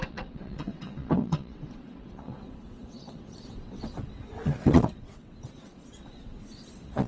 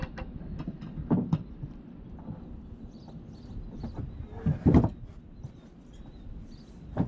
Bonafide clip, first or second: second